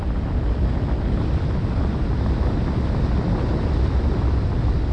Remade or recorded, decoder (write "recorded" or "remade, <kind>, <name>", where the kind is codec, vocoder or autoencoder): recorded